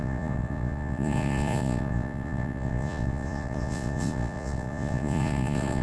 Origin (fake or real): fake